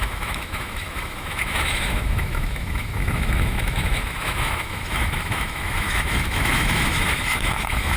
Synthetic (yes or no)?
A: yes